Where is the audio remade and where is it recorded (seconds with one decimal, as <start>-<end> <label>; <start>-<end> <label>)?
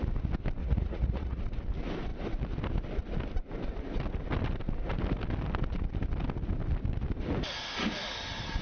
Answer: 0.0-0.6 recorded; 0.6-1.4 remade; 1.4-8.6 recorded